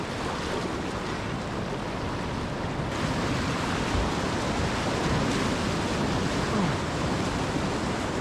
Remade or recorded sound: recorded